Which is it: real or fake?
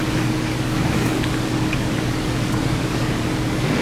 fake